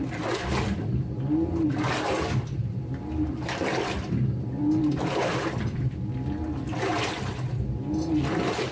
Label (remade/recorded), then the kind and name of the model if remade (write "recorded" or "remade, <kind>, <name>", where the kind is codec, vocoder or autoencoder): recorded